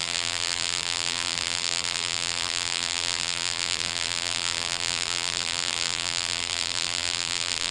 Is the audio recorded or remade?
remade